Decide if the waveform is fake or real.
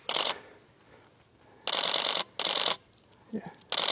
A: real